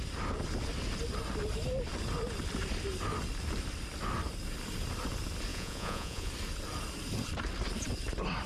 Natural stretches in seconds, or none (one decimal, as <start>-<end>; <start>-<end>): 0.0-5.5; 6.3-8.5